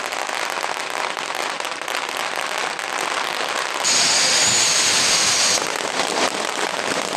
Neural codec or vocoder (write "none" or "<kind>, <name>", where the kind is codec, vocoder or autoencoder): none